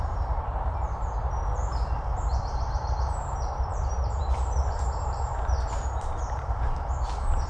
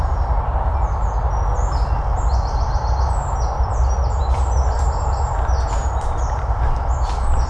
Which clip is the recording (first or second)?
second